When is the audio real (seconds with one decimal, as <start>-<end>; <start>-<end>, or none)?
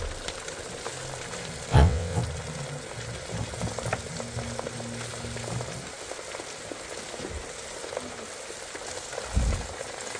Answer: 0.0-1.7; 2.2-10.2